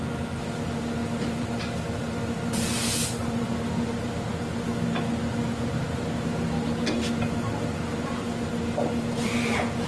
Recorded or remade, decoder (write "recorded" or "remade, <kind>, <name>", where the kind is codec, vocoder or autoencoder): recorded